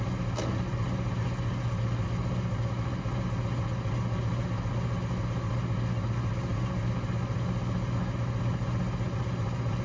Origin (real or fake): real